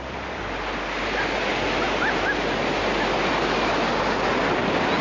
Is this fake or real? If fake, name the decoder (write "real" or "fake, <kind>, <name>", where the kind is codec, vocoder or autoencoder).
real